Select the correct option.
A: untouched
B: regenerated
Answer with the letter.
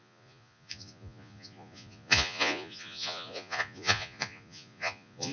B